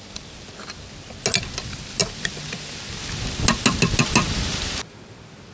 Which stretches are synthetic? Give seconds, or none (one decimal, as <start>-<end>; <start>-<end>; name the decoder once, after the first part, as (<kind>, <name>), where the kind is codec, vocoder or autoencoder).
none